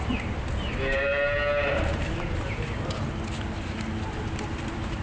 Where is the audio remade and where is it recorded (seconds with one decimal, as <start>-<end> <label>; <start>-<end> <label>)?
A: 0.0-1.1 remade; 1.1-4.1 recorded; 4.1-5.0 remade